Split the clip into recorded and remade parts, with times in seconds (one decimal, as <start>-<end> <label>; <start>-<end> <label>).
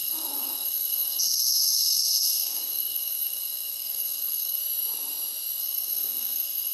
0.0-4.6 remade; 4.6-5.6 recorded; 5.6-6.7 remade